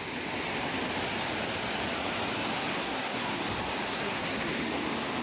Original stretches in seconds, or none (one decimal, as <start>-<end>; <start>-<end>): 0.0-2.7; 3.4-3.9; 4.5-5.2